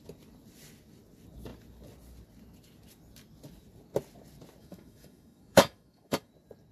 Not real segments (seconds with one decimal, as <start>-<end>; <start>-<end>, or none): 4.6-6.3